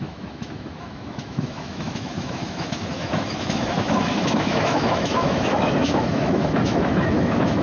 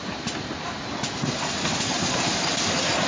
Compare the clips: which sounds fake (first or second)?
first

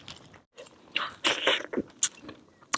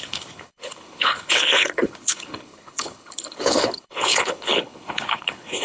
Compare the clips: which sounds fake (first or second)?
second